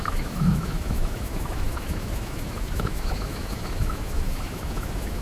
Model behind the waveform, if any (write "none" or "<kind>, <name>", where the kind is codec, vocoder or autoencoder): autoencoder, DAC-VAE